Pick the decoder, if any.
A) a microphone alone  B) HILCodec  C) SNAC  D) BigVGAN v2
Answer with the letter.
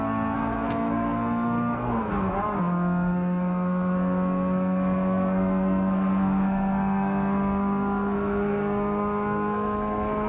C